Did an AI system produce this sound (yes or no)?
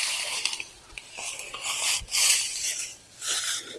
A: yes